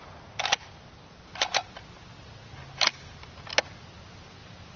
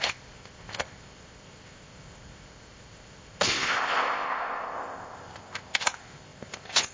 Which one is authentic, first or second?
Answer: first